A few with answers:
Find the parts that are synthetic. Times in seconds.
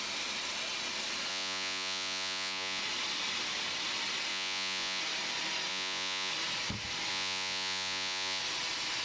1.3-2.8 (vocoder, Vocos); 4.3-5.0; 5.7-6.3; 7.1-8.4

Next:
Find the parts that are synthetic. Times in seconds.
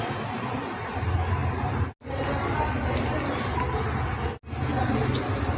none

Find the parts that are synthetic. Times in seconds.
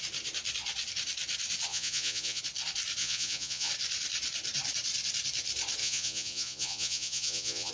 1.7-2.4 (vocoder, Vocos); 3.0-3.7; 5.8-7.7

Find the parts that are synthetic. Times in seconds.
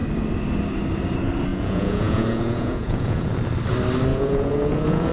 1.5-3.3 (vocoder, Vocos); 4.1-5.1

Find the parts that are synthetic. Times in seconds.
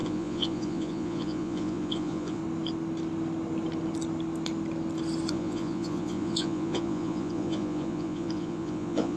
0.0-2.4 (vocoder, Vocos); 5.3-9.2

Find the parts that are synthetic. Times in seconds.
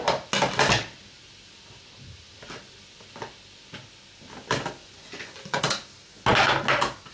4.8-5.6 (vocoder, Vocos)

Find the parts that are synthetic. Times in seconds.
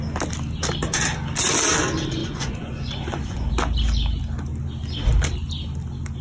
2.2-3.5 (vocoder, Vocos)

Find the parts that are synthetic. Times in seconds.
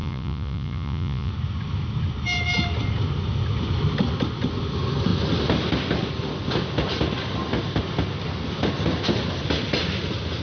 0.0-1.3 (vocoder, Vocos)